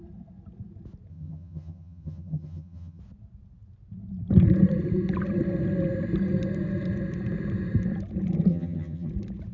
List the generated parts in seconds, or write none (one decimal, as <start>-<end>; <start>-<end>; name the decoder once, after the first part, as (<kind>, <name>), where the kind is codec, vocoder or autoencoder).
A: 1.1-3.0 (vocoder, HiFi-GAN); 8.5-9.1